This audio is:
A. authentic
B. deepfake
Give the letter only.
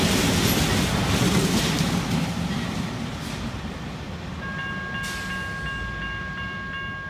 A